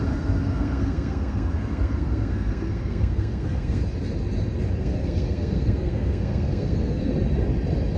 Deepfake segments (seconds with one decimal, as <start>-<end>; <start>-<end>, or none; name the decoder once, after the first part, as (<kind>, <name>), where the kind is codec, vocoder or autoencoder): 0.0-3.8 (codec, SNAC); 4.8-7.1